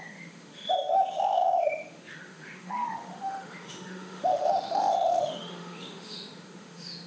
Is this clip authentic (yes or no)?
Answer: no